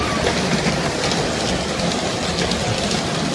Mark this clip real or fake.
real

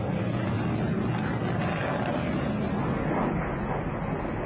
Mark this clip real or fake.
real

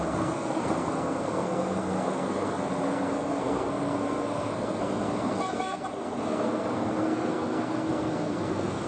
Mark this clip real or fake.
fake